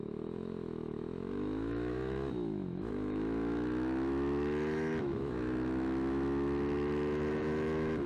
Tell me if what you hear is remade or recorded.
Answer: remade